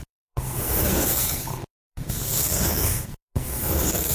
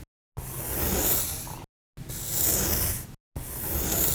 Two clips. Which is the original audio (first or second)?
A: second